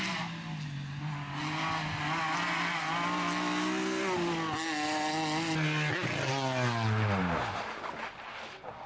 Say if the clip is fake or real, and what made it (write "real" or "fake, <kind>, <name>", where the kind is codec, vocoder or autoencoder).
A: real